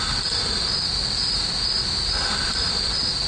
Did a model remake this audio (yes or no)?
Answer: no